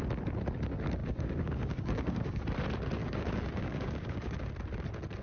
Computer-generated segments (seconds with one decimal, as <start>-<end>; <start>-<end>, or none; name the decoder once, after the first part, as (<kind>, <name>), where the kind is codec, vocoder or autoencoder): 1.0-2.4 (codec, DAC); 3.0-4.5